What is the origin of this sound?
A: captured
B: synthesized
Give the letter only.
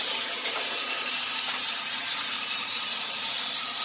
B